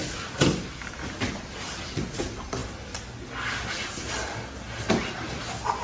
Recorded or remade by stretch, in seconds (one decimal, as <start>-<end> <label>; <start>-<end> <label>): 0.0-5.8 recorded